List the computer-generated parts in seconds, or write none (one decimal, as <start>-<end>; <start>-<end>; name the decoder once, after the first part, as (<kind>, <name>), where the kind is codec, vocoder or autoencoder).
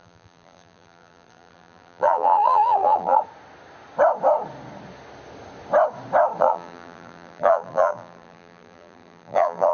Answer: 0.0-3.2 (vocoder, BigVGAN v2); 6.4-9.7